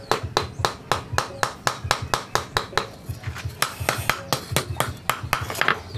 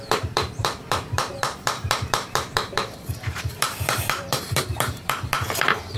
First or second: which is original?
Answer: first